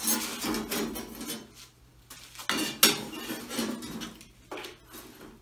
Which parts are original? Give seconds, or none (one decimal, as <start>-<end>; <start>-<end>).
0.0-5.4